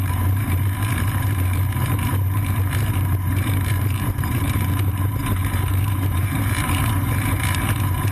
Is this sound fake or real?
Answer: fake